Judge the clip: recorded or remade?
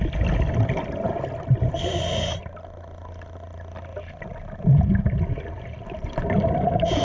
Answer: recorded